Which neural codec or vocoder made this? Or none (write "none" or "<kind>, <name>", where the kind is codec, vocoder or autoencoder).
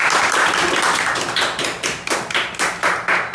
none